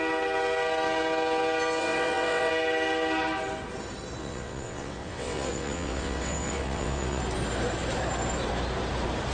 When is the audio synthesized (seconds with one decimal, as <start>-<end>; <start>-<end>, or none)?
1.8-2.5; 4.2-7.2